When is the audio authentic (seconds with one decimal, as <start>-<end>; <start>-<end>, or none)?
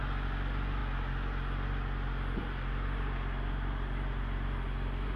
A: 0.0-5.2